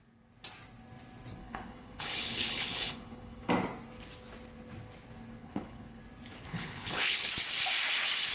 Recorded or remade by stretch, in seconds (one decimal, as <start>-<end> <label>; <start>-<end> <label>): 0.0-1.4 recorded; 1.4-3.5 remade; 3.5-5.4 recorded; 5.4-6.0 remade; 6.0-6.5 recorded; 6.5-7.3 remade; 7.3-8.3 recorded